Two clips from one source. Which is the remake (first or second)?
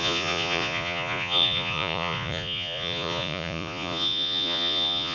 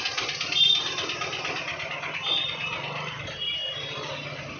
first